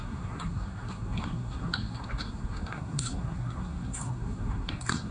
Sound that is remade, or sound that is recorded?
remade